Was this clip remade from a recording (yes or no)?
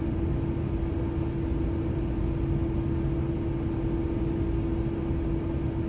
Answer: no